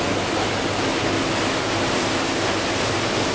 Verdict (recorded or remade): recorded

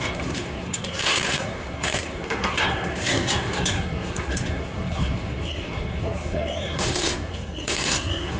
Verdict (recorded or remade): remade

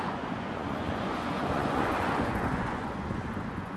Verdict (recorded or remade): remade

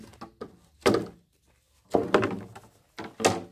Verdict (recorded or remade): recorded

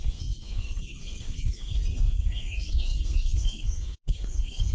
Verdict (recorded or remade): remade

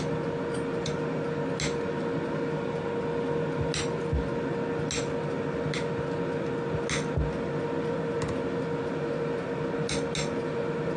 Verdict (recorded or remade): recorded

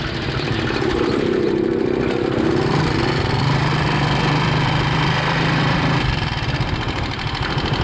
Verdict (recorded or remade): remade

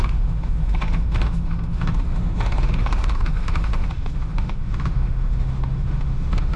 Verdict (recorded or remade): remade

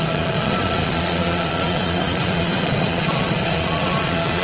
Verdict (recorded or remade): remade